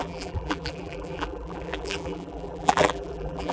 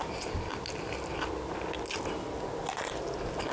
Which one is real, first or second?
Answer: second